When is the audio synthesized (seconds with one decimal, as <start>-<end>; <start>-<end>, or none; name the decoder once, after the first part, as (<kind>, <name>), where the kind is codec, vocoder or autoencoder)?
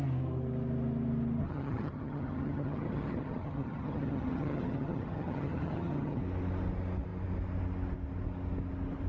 1.4-6.2 (vocoder, HiFi-GAN)